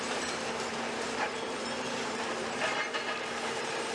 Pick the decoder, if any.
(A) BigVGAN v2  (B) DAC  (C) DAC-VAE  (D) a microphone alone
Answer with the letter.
A